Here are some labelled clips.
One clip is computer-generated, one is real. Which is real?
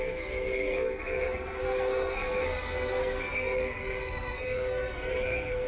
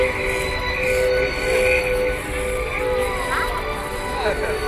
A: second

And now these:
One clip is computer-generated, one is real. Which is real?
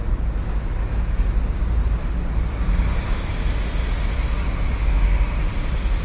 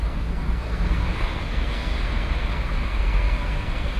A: first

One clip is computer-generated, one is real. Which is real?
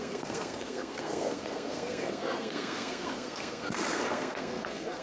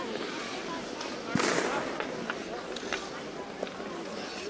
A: second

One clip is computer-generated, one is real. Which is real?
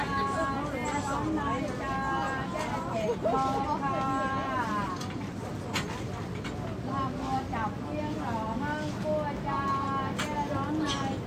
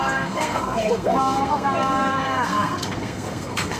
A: first